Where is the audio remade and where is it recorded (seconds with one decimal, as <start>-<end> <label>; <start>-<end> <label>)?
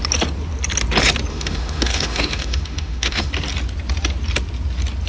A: 0.0-1.3 recorded; 1.3-3.3 remade; 3.3-5.1 recorded